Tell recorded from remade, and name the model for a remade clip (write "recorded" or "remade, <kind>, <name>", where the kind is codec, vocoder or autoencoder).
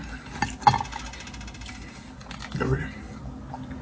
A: recorded